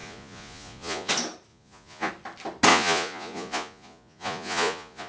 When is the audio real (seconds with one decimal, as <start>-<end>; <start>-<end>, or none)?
1.1-1.5; 2.1-2.7